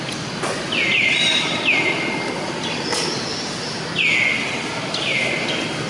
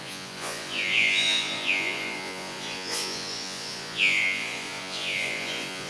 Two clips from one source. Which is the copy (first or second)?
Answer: second